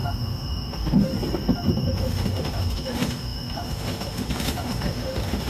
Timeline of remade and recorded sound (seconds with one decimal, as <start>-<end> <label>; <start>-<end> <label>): 0.0-1.1 remade; 1.1-1.7 recorded; 1.7-5.5 remade